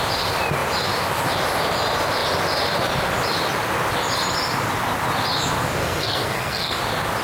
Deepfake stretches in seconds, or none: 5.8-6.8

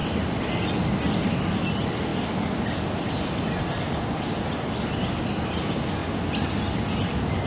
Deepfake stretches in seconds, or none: none

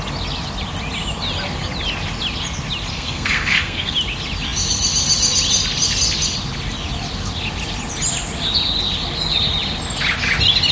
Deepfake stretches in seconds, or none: 2.9-3.9

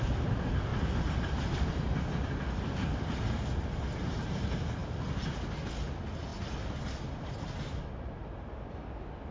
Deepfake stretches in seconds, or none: none

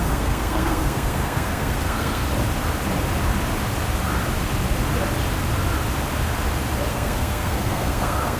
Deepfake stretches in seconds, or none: 0.0-2.2; 6.9-8.4